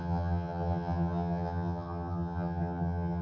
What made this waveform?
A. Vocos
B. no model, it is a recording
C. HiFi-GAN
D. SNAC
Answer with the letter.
C